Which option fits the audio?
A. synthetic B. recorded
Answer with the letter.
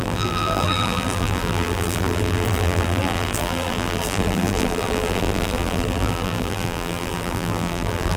A